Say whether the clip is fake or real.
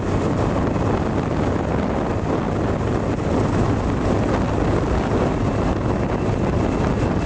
real